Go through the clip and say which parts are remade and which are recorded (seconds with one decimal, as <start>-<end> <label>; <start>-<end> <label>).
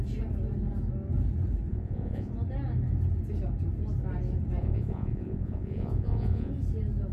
0.0-1.7 recorded; 1.7-2.3 remade; 2.3-4.6 recorded; 4.6-6.5 remade; 6.5-7.1 recorded